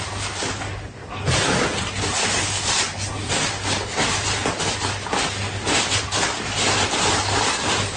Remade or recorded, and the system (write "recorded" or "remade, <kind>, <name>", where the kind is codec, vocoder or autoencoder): recorded